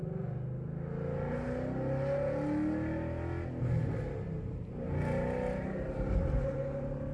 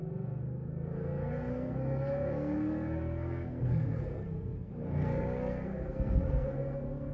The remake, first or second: second